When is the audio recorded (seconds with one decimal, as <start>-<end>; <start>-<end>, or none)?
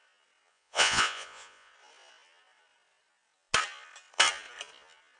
0.0-0.5; 1.7-5.2